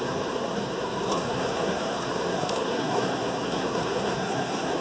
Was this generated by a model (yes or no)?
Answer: yes